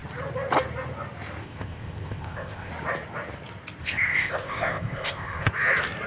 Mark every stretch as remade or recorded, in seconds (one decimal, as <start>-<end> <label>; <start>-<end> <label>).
0.0-1.4 recorded; 1.4-2.7 remade; 2.7-3.8 recorded; 3.8-5.5 remade; 5.5-6.1 recorded